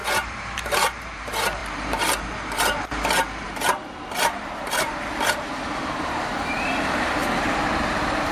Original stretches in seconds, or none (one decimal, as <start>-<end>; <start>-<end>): 7.2-7.8